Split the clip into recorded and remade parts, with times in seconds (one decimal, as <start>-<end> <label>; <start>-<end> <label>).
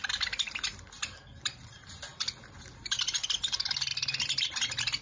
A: 0.0-5.0 recorded